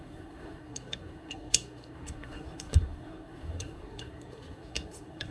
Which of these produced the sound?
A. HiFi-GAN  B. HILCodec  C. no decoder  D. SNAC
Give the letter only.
D